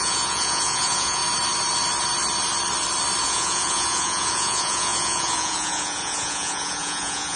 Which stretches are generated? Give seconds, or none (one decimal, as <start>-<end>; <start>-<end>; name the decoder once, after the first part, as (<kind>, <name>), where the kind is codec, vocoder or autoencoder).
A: 0.0-1.2 (vocoder, Vocos); 3.2-7.4